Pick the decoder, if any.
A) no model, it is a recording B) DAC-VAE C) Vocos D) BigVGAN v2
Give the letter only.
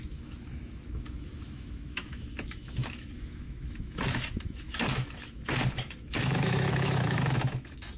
B